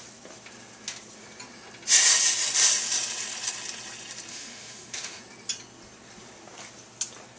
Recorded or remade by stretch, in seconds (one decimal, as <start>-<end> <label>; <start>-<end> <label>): 0.0-4.3 recorded; 4.3-5.2 remade; 5.2-7.4 recorded